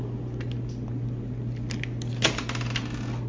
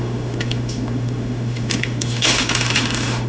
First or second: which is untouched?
first